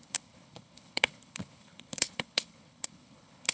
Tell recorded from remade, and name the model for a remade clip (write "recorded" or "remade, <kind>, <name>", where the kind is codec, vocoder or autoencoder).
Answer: remade, codec, HILCodec